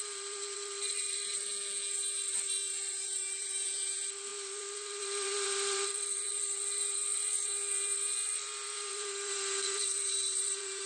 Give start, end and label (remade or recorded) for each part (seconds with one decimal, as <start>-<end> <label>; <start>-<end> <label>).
0.0-1.5 remade; 1.5-2.3 recorded; 2.3-10.9 remade